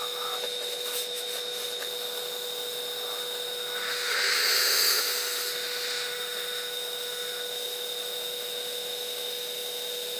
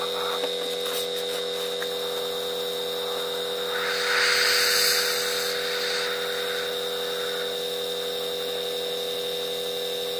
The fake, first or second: first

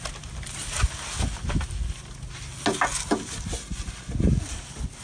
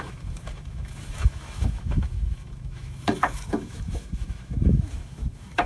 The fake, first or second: second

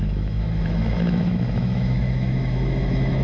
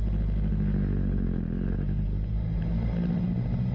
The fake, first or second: first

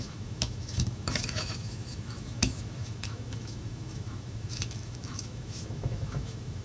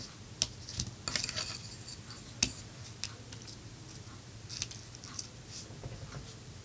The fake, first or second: first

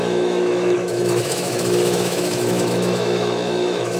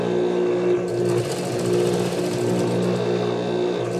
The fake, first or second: first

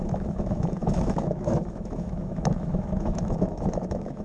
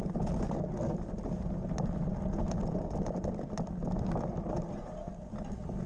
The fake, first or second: first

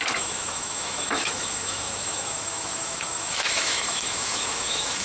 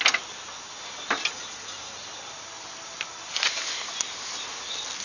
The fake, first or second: first